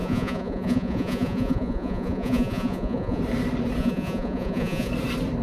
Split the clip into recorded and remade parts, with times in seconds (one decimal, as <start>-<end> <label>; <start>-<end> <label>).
0.0-3.2 remade; 3.2-3.8 recorded; 3.8-4.9 remade; 4.9-5.4 recorded